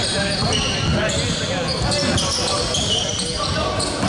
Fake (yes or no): no